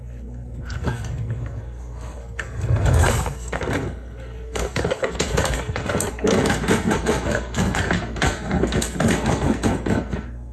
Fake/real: fake